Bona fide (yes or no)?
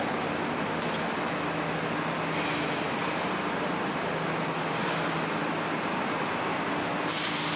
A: yes